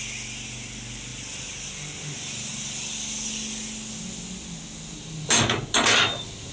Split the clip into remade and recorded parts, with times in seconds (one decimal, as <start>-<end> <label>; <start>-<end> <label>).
0.0-6.5 recorded